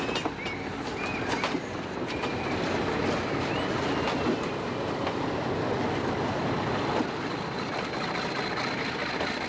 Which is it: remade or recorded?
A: recorded